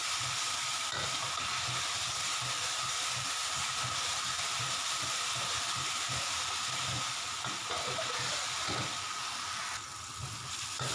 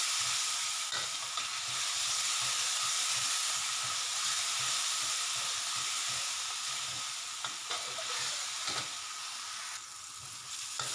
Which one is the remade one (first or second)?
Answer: first